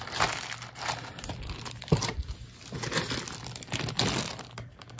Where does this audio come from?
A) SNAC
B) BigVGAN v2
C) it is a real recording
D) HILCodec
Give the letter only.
C